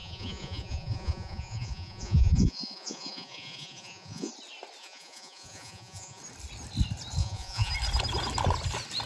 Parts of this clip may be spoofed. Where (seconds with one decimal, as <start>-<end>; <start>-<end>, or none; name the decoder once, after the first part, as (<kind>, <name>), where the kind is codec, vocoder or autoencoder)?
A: 0.0-4.3 (vocoder, Vocos); 4.8-6.2; 7.2-7.7